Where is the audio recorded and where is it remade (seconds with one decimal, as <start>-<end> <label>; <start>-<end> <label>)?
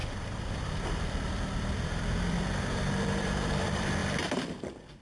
0.0-5.0 remade